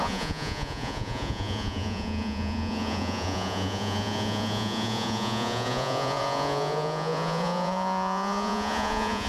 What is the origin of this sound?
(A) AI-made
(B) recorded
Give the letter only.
A